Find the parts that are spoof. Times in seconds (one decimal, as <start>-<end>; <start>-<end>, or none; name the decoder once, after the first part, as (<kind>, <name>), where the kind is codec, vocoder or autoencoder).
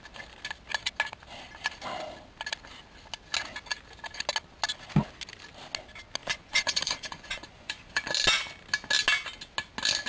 6.2-8.1 (vocoder, Vocos)